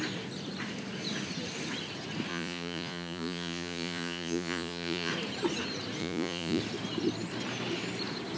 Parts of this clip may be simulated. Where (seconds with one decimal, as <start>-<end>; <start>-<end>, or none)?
2.3-5.1; 6.0-6.6